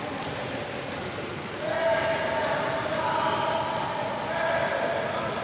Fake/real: real